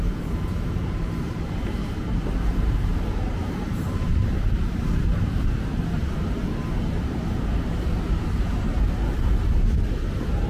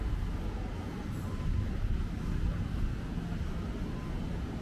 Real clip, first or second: second